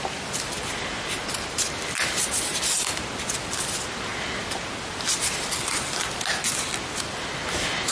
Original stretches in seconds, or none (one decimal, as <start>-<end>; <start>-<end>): 0.0-7.9